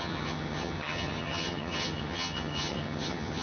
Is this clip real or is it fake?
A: fake